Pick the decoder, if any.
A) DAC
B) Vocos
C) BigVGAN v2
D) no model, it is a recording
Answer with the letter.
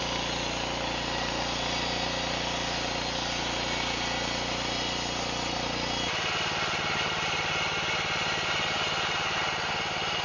D